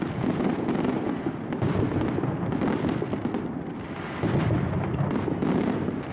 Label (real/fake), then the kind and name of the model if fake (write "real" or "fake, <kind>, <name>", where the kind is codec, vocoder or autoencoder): real